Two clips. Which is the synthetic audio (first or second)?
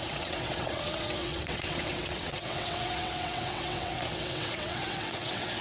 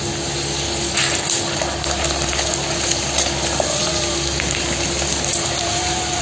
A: first